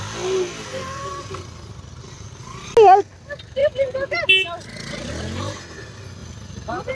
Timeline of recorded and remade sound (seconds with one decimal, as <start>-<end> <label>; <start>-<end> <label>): 0.0-6.9 recorded